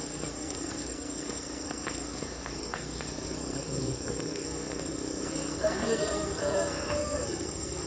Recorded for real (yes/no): no